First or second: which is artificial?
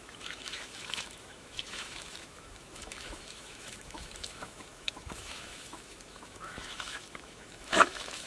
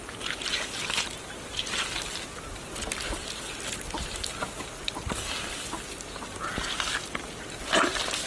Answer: first